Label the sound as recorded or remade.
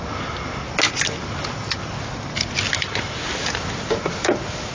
recorded